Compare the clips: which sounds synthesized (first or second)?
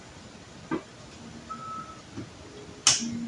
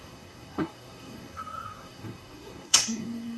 second